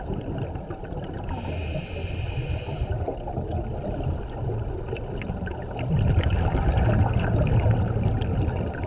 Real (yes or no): yes